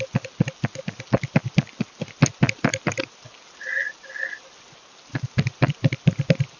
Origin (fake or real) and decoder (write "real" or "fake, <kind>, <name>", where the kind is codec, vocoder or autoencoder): real